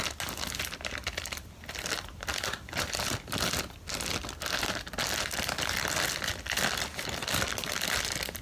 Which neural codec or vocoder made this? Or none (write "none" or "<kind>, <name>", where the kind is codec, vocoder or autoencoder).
none